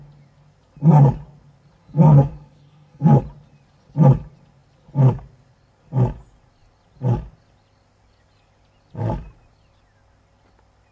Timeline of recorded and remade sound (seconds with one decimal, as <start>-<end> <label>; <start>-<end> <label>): 0.0-1.8 recorded; 1.8-3.2 remade; 3.2-10.9 recorded